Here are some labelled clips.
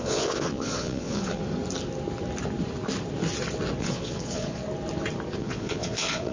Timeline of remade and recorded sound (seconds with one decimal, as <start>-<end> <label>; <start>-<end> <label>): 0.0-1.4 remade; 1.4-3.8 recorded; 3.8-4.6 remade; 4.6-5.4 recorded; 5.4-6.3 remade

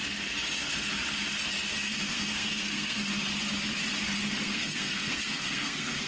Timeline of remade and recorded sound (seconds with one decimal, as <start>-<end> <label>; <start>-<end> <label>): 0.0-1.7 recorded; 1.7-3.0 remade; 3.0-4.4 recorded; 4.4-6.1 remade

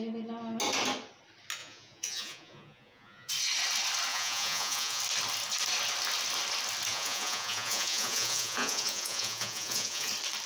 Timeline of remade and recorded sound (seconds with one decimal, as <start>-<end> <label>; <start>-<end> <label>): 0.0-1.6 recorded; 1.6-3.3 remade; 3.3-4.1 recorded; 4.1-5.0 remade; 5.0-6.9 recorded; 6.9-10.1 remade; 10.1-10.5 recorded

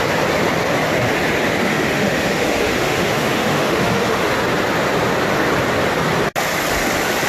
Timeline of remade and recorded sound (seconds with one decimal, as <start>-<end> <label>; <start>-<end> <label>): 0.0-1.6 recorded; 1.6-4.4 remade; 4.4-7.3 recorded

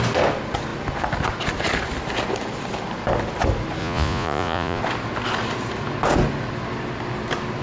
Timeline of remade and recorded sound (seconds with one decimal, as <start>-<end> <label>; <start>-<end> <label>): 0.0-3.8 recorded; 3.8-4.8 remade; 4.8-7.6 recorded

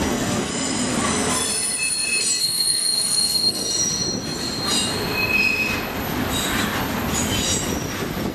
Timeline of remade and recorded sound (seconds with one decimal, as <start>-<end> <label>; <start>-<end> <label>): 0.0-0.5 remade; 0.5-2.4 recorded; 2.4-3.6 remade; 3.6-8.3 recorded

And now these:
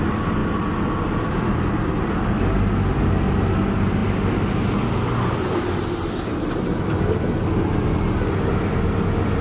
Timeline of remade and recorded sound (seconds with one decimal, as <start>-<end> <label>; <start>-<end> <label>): 0.0-9.4 recorded